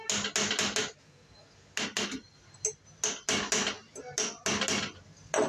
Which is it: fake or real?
real